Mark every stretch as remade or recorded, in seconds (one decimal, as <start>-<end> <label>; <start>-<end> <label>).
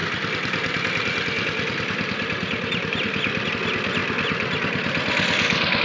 0.0-3.5 remade; 3.5-5.8 recorded